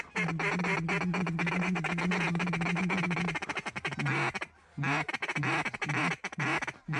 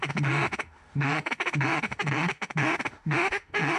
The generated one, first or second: second